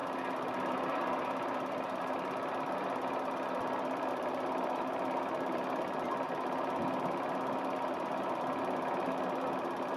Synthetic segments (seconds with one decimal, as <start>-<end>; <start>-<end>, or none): none

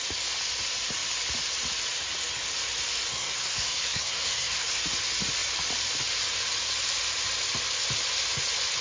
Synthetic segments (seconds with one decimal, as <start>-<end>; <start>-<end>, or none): 3.1-4.8

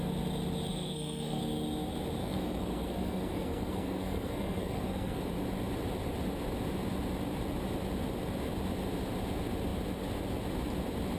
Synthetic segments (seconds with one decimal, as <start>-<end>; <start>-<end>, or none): 0.7-1.4; 2.2-5.2